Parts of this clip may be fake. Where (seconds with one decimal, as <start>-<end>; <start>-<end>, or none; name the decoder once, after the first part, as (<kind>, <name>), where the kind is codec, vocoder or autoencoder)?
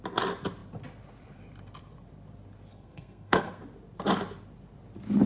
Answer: 2.7-3.6 (codec, SNAC)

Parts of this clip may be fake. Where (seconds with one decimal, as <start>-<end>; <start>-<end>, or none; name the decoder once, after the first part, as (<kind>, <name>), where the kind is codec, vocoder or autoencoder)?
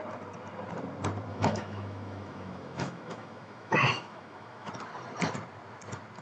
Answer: 1.3-4.7 (autoencoder, DAC-VAE)